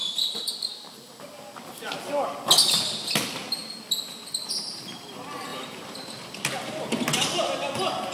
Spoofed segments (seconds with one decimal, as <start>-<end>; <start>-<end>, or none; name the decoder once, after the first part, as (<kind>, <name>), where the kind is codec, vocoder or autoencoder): 0.0-1.2 (vocoder, BigVGAN v2); 5.5-7.0